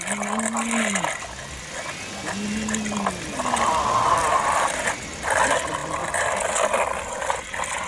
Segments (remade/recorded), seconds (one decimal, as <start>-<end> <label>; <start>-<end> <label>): 0.0-7.9 recorded